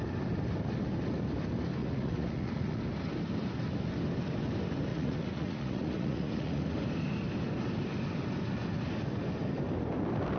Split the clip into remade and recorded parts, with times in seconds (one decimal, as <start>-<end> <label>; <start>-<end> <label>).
0.0-1.8 recorded; 1.8-2.8 remade; 2.8-4.9 recorded; 4.9-6.6 remade; 6.6-10.4 recorded